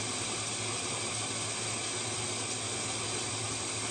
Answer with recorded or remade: recorded